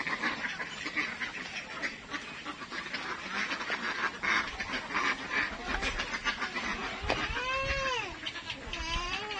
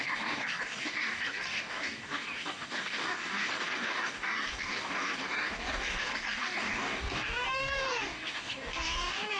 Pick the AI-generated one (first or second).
second